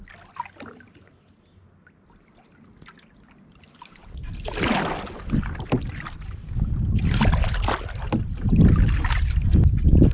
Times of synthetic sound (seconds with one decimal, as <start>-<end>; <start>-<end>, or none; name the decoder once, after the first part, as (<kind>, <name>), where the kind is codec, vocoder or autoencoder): none